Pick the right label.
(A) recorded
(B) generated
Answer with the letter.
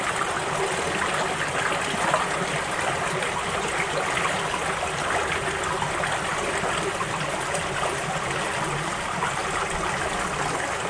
A